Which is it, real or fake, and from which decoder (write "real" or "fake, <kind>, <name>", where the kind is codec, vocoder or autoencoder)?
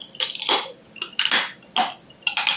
real